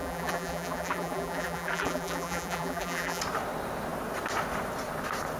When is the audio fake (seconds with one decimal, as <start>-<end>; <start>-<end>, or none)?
0.0-3.2

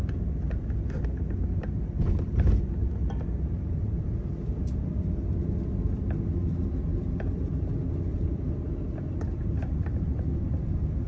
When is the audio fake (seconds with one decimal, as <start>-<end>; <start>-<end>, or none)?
2.8-4.9; 6.9-7.4; 8.1-8.7

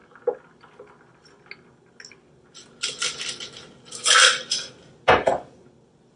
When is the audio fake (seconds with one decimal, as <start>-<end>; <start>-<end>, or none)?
none

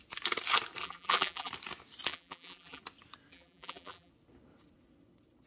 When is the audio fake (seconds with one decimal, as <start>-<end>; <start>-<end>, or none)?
0.8-1.5; 2.1-2.8; 3.3-4.1

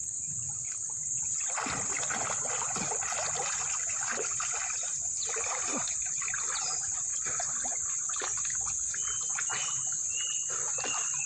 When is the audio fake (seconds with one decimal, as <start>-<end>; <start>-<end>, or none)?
7.1-7.9

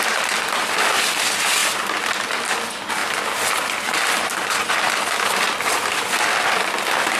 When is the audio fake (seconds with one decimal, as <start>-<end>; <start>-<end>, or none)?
none

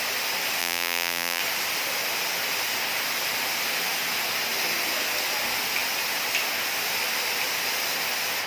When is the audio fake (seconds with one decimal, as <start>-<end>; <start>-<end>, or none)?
0.6-1.4